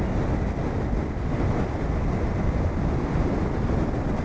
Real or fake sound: real